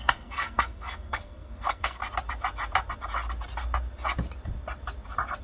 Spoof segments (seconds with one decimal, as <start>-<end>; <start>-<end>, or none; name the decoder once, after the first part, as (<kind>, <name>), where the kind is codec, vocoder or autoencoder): 0.0-2.0 (codec, SNAC)